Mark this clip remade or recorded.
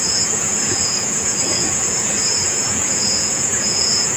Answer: remade